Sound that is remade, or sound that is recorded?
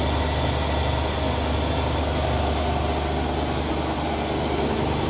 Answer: recorded